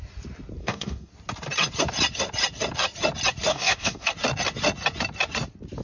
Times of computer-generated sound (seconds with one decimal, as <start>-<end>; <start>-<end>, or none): 0.6-1.1; 3.5-4.1